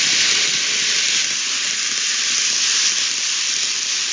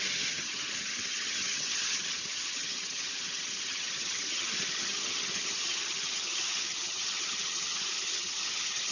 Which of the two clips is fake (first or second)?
second